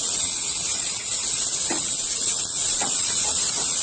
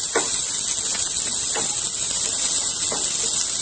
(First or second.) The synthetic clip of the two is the first